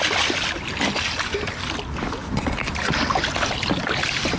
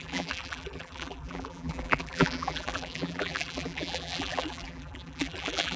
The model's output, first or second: second